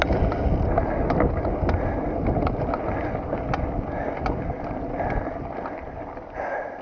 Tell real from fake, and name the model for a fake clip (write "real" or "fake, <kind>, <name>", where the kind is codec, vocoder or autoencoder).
real